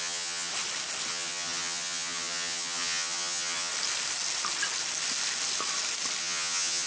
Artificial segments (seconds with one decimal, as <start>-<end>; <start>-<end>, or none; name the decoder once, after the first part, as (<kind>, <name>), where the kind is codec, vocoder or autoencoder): 0.0-0.5 (vocoder, HiFi-GAN); 1.1-3.7; 6.2-6.9